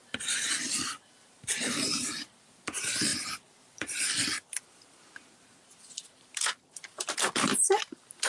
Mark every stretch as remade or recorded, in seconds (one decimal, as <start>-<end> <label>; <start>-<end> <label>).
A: 0.0-8.3 recorded